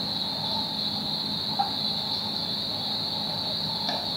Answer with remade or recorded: recorded